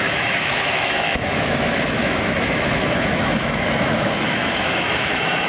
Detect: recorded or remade remade